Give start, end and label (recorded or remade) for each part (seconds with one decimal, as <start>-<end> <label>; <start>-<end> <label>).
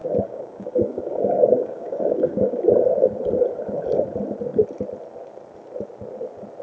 0.0-2.6 remade; 2.6-6.6 recorded